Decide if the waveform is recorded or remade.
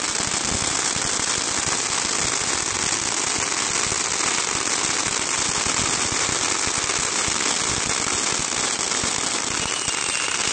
recorded